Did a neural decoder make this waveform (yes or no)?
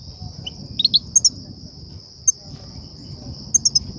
no